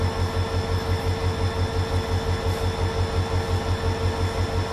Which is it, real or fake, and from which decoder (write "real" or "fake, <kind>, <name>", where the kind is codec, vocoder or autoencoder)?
real